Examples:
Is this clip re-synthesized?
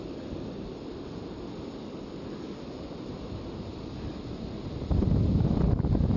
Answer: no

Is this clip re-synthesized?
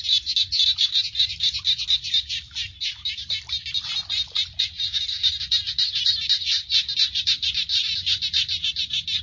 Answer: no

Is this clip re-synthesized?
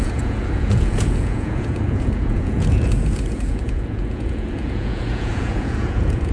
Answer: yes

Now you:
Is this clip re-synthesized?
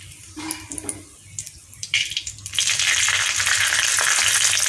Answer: yes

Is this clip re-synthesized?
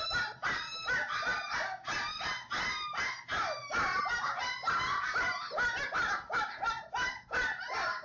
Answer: no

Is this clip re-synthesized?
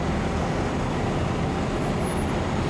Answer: no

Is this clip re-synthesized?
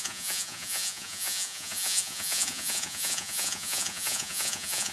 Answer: yes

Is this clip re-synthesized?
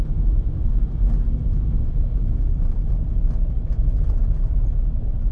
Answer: no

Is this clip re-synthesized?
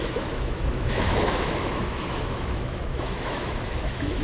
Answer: yes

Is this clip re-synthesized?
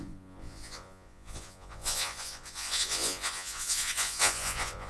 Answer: yes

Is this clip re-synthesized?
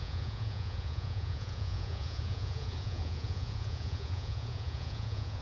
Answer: yes